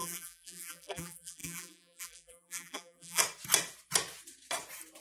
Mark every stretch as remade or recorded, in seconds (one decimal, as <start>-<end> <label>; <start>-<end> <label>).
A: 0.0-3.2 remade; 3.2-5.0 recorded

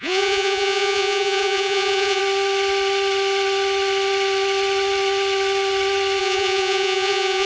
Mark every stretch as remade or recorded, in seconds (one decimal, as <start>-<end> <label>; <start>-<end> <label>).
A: 0.0-2.2 remade; 2.2-6.2 recorded; 6.2-7.5 remade

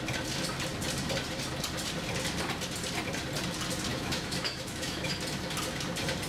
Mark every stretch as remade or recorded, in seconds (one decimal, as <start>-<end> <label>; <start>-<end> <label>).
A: 0.0-3.9 recorded; 3.9-5.1 remade; 5.1-6.3 recorded

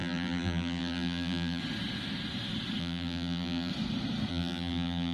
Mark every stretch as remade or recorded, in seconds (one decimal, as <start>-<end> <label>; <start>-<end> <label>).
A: 0.0-1.6 remade; 1.6-2.8 recorded; 2.8-3.7 remade; 3.7-4.3 recorded; 4.3-5.1 remade